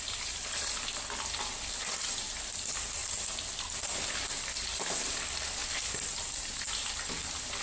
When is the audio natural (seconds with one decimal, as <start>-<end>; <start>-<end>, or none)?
0.0-7.6